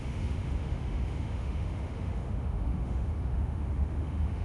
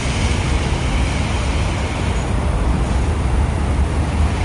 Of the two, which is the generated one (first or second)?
first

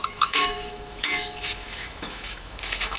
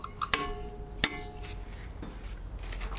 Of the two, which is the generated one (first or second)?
first